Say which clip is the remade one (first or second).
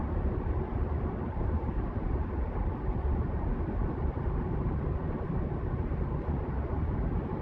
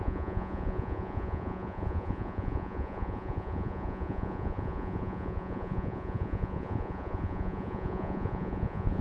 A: second